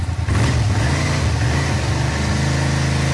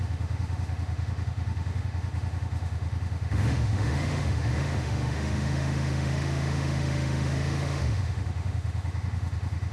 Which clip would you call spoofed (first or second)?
second